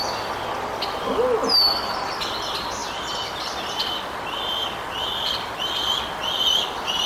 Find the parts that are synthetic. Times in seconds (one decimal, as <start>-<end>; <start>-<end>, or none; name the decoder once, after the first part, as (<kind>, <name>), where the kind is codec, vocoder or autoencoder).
none